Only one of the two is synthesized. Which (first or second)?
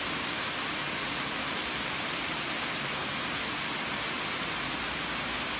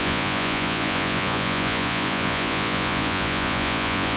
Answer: second